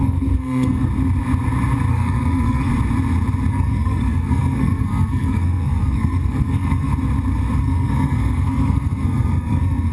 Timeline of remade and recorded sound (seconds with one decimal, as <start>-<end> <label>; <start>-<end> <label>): 0.0-0.9 remade; 0.9-1.9 recorded; 1.9-2.7 remade; 2.7-3.5 recorded; 3.5-6.9 remade; 6.9-7.6 recorded; 7.6-9.9 remade